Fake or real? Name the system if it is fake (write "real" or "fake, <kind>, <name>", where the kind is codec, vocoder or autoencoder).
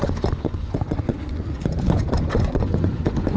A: fake, vocoder, Vocos